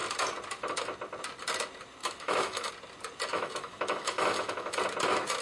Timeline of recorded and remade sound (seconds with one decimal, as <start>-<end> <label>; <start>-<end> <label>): 0.0-2.0 recorded; 2.0-2.7 remade; 2.7-3.3 recorded; 3.3-4.8 remade; 4.8-5.4 recorded